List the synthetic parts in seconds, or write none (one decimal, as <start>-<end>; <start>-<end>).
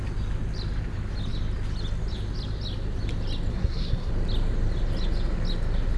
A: 3.5-4.1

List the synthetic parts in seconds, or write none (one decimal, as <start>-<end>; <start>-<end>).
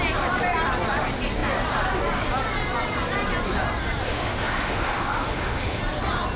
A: 4.0-5.8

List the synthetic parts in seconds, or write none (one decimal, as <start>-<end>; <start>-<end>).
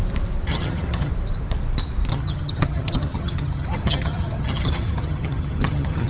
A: 0.5-1.1; 2.1-6.1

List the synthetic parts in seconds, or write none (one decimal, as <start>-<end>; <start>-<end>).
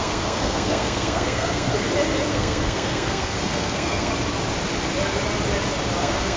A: 0.0-1.7; 2.3-4.1; 6.0-6.4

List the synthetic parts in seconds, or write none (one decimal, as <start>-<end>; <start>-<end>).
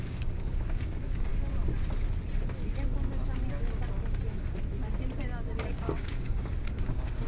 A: 0.0-1.3; 5.7-7.3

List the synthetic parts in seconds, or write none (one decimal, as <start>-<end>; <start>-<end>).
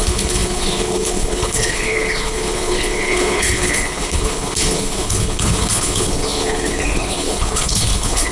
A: 0.0-8.3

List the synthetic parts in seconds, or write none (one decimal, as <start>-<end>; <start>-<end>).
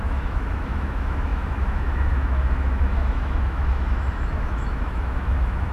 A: 0.0-5.7